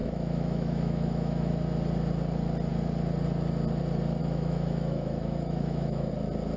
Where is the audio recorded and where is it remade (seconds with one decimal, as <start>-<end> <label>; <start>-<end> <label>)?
0.0-1.5 remade; 1.5-4.2 recorded; 4.2-6.1 remade; 6.1-6.6 recorded

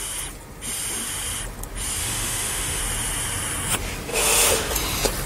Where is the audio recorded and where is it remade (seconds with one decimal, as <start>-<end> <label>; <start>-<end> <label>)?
0.0-2.0 recorded; 2.0-2.8 remade; 2.8-4.1 recorded; 4.1-4.7 remade; 4.7-5.3 recorded

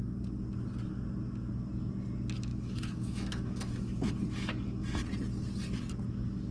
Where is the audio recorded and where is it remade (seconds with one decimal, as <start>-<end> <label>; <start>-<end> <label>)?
0.0-2.5 recorded; 2.5-4.1 remade; 4.1-6.5 recorded

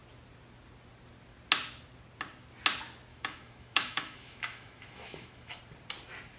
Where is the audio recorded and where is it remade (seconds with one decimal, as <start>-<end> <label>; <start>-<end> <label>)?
0.0-3.1 recorded; 3.1-5.6 remade; 5.6-6.4 recorded